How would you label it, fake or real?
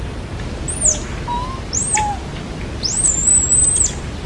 real